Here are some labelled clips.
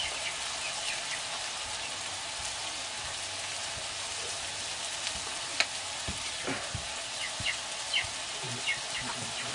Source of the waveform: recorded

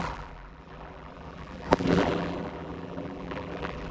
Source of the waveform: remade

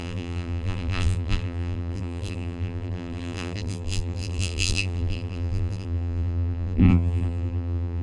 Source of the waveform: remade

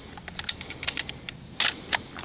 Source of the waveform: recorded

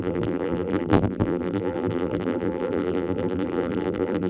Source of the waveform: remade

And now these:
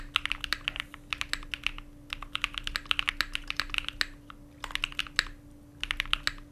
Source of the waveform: recorded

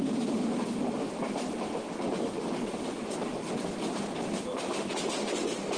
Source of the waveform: recorded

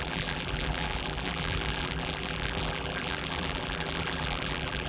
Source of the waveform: remade